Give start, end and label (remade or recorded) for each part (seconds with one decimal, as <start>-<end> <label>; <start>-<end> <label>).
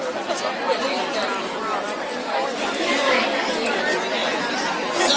0.0-2.2 recorded; 2.2-3.8 remade; 3.8-5.2 recorded